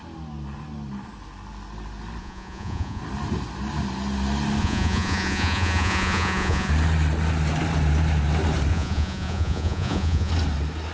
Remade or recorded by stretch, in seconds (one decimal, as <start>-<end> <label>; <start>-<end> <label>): 0.0-2.2 recorded; 2.2-3.0 remade; 3.0-4.6 recorded; 4.6-6.7 remade; 6.7-8.7 recorded; 8.7-10.3 remade; 10.3-10.9 recorded